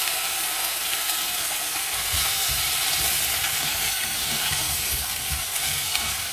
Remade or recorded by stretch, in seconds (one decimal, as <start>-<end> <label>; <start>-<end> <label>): 0.0-2.5 remade; 2.5-3.5 recorded; 3.5-6.3 remade